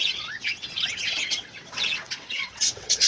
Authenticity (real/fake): fake